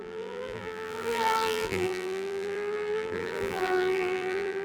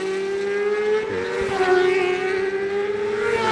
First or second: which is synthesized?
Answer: first